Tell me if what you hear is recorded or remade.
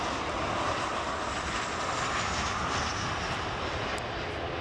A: recorded